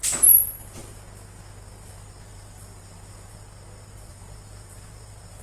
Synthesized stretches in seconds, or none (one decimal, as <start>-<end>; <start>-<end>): 2.3-3.3; 4.1-5.4